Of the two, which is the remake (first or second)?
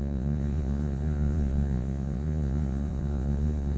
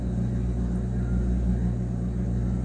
first